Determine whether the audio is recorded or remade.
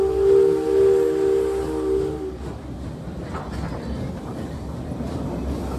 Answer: recorded